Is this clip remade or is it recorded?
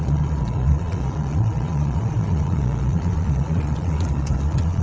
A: remade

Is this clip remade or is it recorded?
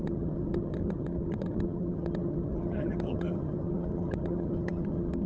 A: remade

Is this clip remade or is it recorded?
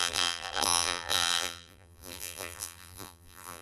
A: remade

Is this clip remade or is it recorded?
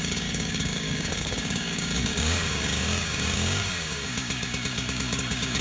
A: remade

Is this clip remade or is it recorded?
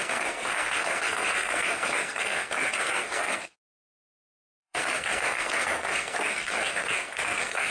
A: remade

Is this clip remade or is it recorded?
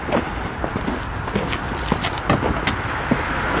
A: recorded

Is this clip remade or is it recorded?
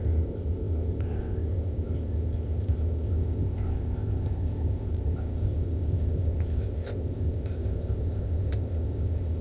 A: remade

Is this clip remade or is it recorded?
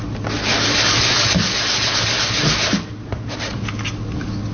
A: recorded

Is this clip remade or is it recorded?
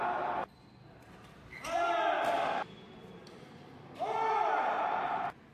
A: recorded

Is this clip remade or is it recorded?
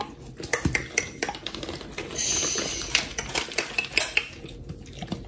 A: recorded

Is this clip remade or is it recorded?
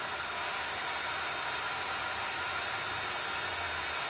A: recorded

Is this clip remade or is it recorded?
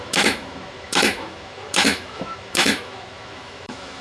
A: remade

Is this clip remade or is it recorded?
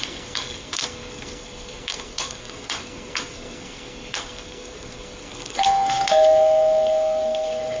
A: remade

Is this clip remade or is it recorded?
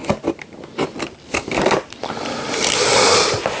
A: recorded